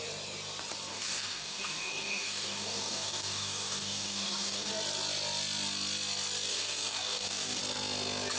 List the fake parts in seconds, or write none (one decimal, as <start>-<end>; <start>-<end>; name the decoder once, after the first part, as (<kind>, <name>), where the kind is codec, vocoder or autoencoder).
0.9-4.7 (codec, DAC); 6.5-7.6